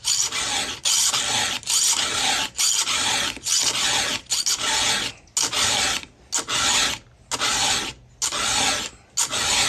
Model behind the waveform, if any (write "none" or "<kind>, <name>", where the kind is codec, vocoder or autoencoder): none